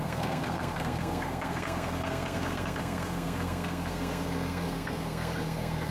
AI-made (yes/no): yes